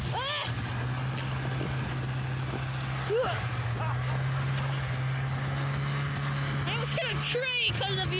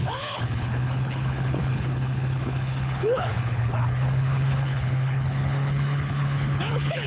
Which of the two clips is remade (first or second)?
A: second